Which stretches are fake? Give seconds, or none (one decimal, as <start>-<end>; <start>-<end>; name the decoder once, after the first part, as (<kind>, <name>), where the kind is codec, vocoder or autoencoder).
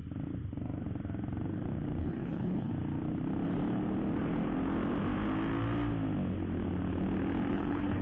2.0-2.7 (codec, HILCodec); 7.5-8.0